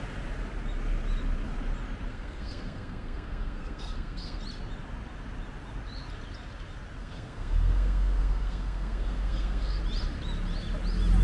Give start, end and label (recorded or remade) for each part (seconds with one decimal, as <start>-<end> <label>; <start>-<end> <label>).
0.0-2.1 recorded; 2.1-4.4 remade; 4.4-7.0 recorded; 7.0-9.8 remade; 9.8-11.2 recorded